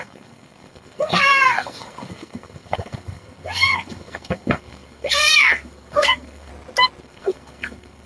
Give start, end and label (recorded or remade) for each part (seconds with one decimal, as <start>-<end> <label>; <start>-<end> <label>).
0.0-6.5 remade; 6.5-7.0 recorded; 7.0-8.1 remade

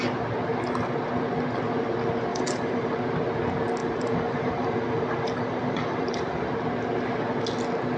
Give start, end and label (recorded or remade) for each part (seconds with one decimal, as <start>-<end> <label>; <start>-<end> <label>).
0.0-2.3 recorded; 2.3-3.0 remade; 3.0-3.8 recorded; 3.8-6.5 remade; 6.5-8.0 recorded

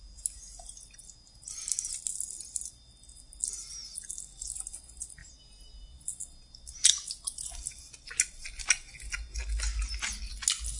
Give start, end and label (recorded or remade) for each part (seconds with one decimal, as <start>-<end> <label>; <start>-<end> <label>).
0.0-10.8 recorded

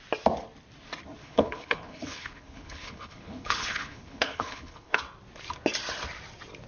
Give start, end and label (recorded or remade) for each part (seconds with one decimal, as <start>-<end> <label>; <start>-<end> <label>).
0.0-1.2 recorded; 1.2-5.0 remade; 5.0-6.7 recorded

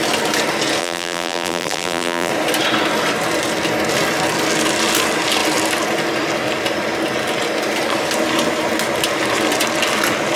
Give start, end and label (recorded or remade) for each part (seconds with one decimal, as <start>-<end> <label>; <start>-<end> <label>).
0.0-0.8 recorded; 0.8-2.3 remade; 2.3-10.4 recorded

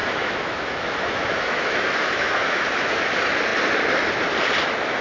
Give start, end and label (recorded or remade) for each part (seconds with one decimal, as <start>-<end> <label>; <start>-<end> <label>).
0.0-3.0 remade; 3.0-5.0 recorded

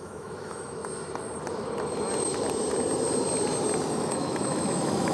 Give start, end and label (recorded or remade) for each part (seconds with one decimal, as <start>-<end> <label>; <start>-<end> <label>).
0.0-0.8 remade; 0.8-3.9 recorded; 3.9-5.1 remade

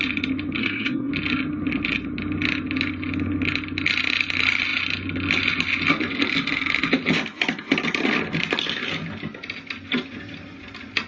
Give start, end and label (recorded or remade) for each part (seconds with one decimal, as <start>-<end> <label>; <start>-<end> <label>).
0.0-0.6 recorded; 0.6-1.1 remade; 1.1-11.1 recorded